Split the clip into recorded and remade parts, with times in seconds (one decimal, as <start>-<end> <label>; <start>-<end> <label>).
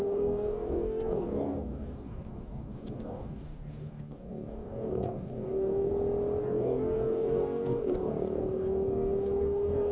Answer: 0.0-5.9 remade; 5.9-6.4 recorded; 6.4-9.9 remade